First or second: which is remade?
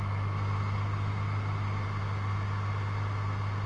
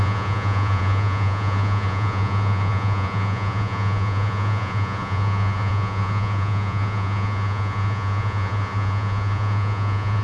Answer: second